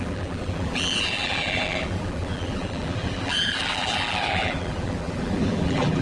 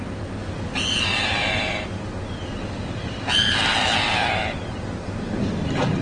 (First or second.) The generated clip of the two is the first